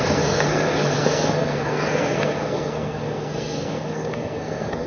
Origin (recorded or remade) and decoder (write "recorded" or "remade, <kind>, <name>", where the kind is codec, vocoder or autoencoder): remade, codec, SNAC